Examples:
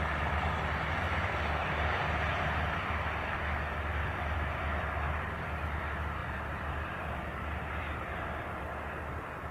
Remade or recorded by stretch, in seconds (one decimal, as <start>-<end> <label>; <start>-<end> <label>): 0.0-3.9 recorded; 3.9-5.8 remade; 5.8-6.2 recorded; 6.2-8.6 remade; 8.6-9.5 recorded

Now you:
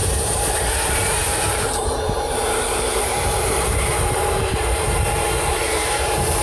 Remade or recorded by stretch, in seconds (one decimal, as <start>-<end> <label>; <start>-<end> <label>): 0.0-6.4 remade

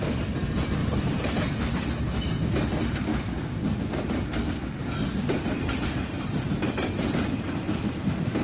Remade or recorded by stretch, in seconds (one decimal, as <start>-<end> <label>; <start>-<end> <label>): 0.0-0.8 recorded; 0.8-1.3 remade; 1.3-8.4 recorded